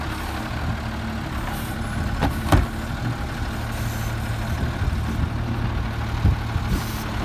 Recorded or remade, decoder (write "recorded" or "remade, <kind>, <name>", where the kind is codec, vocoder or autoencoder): recorded